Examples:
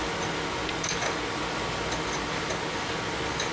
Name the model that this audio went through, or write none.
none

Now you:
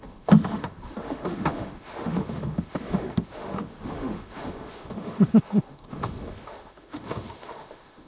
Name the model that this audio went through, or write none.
autoencoder, DAC-VAE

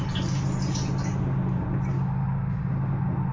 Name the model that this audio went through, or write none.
none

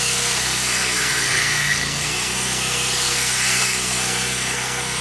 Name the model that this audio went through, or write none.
codec, SNAC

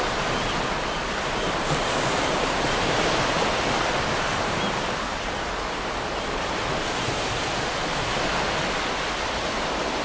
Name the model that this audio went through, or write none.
none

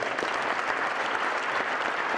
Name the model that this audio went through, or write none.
none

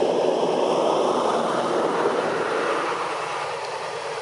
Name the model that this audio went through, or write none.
vocoder, BigVGAN v2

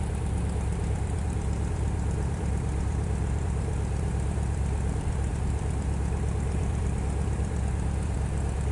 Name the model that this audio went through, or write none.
vocoder, BigVGAN v2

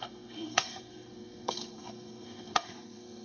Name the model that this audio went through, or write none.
codec, SNAC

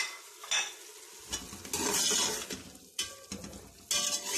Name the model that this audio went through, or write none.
none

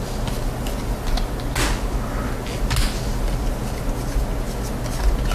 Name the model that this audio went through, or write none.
none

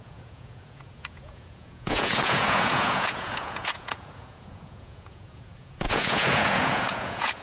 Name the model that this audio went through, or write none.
vocoder, Vocos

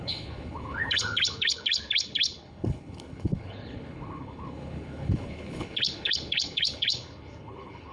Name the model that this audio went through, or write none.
codec, HILCodec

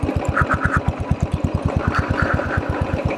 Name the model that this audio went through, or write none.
vocoder, BigVGAN v2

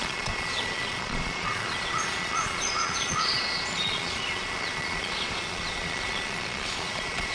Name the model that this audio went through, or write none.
vocoder, Vocos